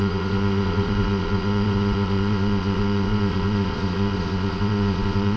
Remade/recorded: remade